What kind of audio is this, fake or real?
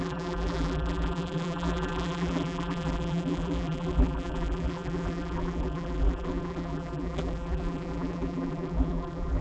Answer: fake